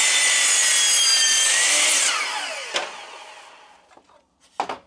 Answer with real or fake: real